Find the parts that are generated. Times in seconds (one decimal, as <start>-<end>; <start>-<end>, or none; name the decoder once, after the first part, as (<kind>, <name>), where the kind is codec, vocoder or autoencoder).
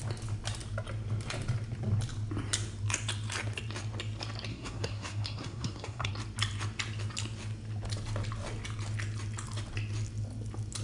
4.5-6.1 (codec, SNAC)